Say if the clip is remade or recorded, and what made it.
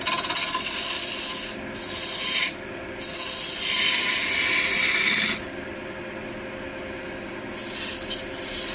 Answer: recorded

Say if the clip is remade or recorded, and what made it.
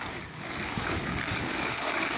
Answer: remade, codec, DAC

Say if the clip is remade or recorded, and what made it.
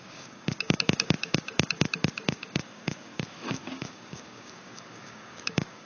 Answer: remade, codec, DAC